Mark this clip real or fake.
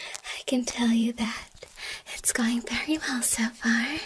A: fake